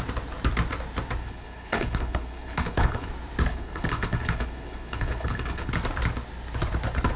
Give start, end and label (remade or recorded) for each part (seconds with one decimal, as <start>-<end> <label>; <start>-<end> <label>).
0.0-1.2 recorded; 1.2-3.1 remade; 3.1-3.5 recorded; 3.5-5.7 remade; 5.7-7.2 recorded